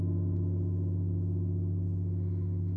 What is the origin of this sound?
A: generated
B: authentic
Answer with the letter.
B